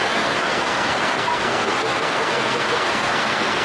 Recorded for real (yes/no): no